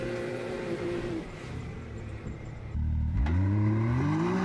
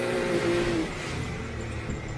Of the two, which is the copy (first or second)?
first